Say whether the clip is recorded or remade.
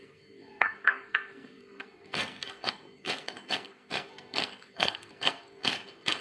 remade